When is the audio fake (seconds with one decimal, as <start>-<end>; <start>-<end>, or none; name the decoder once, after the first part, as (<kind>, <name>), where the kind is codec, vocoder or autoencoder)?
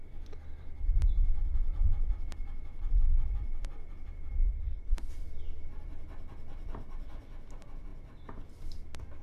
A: 4.5-5.1 (vocoder, BigVGAN v2)